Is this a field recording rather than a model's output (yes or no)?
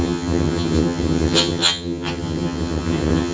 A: no